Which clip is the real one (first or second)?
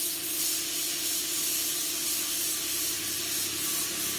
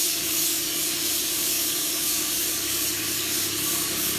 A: first